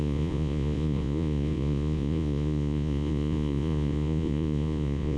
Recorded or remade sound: remade